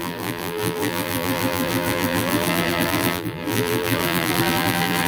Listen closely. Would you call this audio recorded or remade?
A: remade